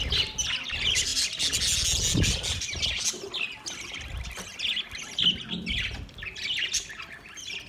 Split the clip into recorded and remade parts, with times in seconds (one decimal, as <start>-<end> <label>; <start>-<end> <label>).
0.0-7.7 recorded